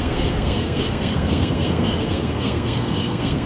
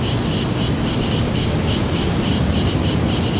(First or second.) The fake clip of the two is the first